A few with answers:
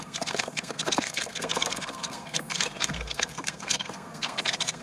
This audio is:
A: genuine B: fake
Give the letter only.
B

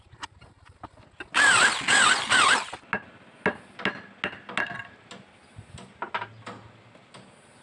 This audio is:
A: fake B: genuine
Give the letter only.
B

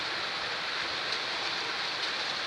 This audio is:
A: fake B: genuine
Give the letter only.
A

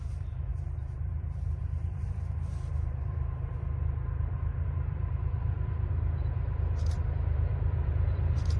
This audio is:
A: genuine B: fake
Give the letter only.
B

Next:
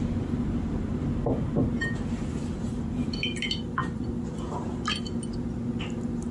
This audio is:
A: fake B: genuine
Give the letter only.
B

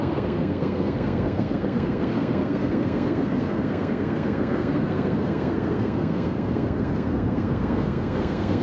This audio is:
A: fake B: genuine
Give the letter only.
A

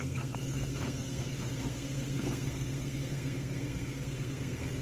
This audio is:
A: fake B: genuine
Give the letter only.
A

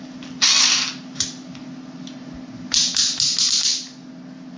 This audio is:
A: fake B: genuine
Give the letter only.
B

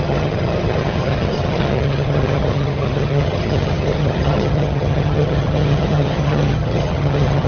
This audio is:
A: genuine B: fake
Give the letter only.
B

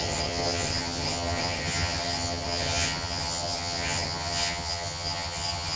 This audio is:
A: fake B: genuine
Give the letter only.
A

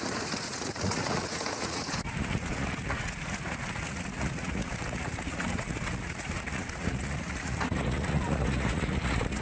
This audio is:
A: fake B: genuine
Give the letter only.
A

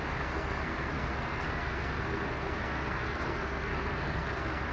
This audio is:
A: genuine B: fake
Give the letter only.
B